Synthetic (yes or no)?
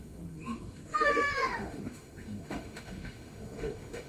yes